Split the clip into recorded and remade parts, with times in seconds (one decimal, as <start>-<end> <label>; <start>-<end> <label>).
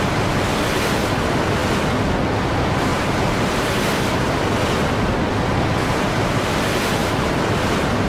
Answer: 0.0-2.9 recorded; 2.9-4.3 remade; 4.3-7.0 recorded; 7.0-8.1 remade